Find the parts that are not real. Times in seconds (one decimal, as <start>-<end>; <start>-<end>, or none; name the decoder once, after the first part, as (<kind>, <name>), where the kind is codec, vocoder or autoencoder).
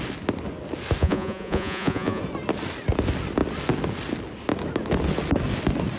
1.0-2.2 (vocoder, Vocos)